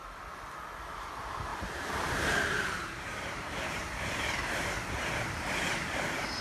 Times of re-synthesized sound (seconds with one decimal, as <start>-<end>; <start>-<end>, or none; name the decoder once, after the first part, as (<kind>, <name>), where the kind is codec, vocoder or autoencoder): 1.5-4.7 (vocoder, BigVGAN v2)